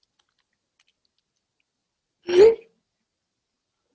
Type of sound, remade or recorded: recorded